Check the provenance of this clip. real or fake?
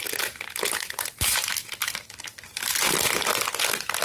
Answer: real